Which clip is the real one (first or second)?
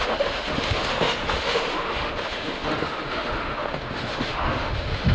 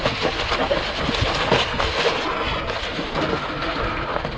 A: second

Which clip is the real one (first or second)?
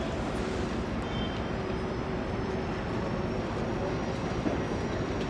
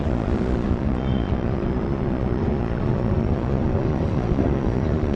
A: first